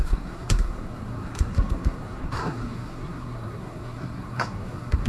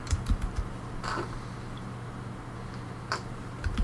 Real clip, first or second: second